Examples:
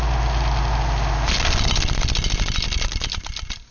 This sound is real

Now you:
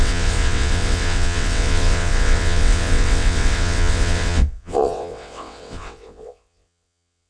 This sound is fake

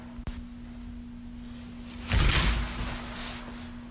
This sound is real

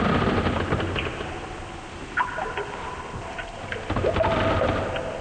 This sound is real